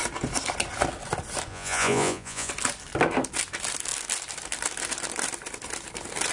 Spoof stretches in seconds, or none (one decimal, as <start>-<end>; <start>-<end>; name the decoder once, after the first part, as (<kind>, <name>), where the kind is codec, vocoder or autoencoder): 1.5-2.5 (vocoder, Vocos)